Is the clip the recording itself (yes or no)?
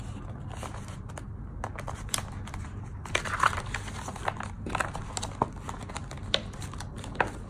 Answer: yes